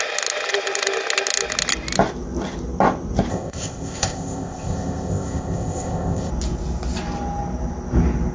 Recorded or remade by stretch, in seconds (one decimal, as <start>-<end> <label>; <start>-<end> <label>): 0.0-3.3 recorded; 3.3-6.3 remade; 6.3-8.3 recorded